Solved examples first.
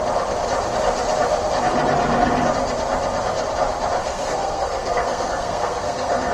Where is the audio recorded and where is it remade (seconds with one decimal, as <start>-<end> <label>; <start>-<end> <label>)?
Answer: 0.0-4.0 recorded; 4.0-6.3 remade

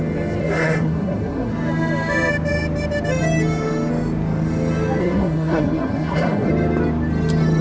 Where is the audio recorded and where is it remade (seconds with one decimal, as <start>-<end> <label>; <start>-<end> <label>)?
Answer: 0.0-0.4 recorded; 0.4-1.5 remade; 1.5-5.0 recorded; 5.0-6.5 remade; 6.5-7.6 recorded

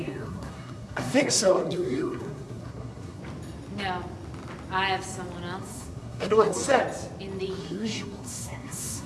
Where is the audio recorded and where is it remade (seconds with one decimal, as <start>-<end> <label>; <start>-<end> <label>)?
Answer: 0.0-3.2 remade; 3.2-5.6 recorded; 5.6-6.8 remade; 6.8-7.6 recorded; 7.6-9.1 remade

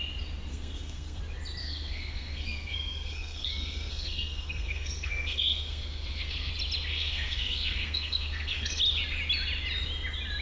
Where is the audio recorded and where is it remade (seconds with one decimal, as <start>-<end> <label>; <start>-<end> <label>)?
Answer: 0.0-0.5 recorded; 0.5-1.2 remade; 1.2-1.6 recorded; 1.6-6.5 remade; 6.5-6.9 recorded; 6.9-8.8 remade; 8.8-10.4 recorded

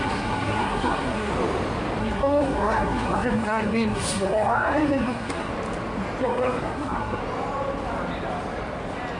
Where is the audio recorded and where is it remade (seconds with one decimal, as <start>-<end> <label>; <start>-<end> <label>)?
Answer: 0.0-1.3 remade; 1.3-2.0 recorded; 2.0-5.5 remade; 5.5-6.2 recorded; 6.2-7.2 remade; 7.2-9.2 recorded

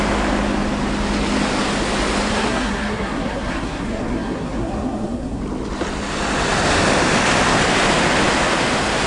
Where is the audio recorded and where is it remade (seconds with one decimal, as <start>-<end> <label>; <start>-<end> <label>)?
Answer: 0.0-2.3 recorded; 2.3-5.4 remade; 5.4-9.1 recorded

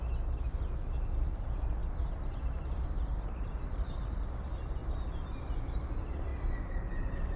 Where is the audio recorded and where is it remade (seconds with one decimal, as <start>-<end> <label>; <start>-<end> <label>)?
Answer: 0.0-7.4 recorded